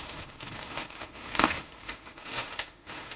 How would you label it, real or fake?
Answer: fake